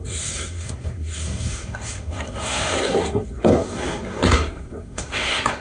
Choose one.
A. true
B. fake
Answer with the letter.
B